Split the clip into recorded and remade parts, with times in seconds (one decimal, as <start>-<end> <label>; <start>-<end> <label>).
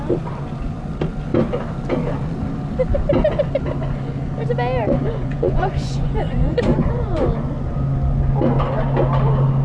0.0-4.8 recorded; 4.8-7.2 remade; 7.2-9.6 recorded